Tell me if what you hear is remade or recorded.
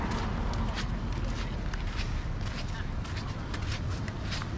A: recorded